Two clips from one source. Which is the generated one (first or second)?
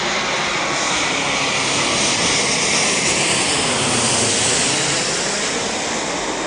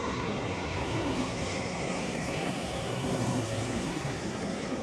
second